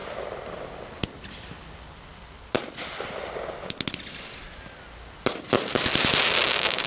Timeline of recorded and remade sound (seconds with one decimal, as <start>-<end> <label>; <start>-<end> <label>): 0.0-6.9 recorded